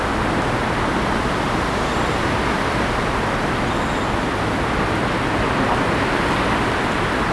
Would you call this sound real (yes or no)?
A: yes